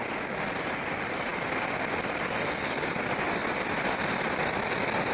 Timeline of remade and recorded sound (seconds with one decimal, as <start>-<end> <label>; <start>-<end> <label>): 0.0-5.1 recorded